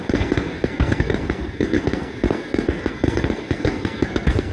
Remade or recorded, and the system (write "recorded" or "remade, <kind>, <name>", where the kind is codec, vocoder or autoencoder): remade, codec, SNAC